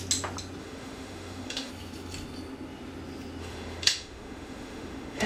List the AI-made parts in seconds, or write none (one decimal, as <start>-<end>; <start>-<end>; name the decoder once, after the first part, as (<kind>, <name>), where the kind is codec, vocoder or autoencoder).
0.6-1.7 (autoencoder, DAC-VAE); 3.4-5.3